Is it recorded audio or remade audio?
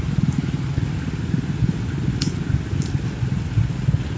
recorded